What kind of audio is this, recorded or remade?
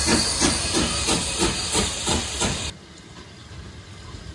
recorded